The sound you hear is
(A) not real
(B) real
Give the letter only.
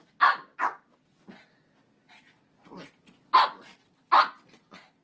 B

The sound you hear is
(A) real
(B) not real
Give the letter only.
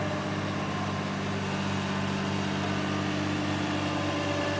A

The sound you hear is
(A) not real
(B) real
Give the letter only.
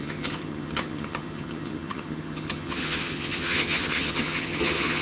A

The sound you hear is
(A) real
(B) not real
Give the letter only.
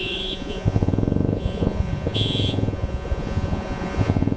B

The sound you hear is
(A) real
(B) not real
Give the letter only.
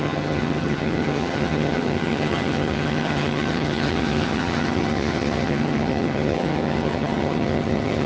B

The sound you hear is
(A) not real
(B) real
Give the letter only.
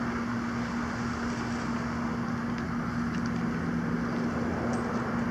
B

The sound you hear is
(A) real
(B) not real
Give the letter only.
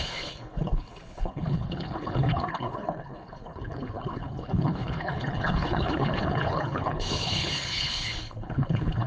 B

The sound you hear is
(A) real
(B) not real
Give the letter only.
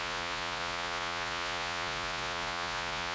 B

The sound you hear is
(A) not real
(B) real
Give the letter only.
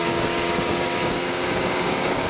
A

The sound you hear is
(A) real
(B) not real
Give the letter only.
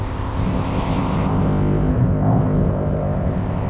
B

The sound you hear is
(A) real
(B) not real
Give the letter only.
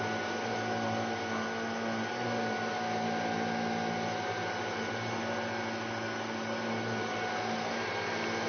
A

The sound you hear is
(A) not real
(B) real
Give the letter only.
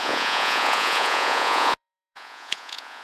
A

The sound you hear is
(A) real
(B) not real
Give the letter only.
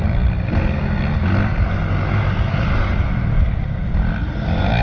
A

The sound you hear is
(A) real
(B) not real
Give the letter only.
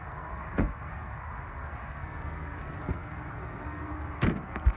B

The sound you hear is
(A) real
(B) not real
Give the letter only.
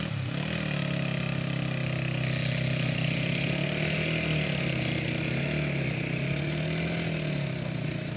A